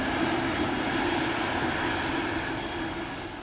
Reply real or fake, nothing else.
real